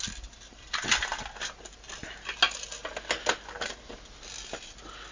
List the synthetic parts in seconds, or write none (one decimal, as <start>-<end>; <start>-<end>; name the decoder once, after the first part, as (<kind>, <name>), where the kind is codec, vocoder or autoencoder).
none